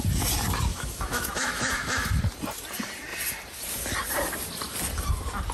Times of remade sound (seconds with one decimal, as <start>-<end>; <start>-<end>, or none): 0.7-2.2